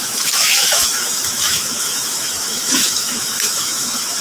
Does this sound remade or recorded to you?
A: remade